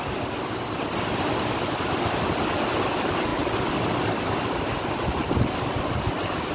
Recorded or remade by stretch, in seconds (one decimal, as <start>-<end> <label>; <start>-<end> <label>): 0.0-6.5 recorded